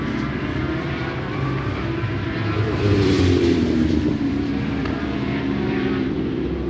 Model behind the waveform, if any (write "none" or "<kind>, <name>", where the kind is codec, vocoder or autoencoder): vocoder, BigVGAN v2